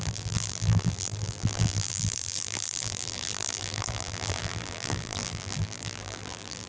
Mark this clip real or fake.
fake